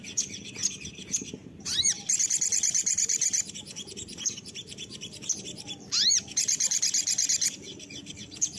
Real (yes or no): no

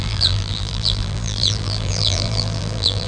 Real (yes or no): no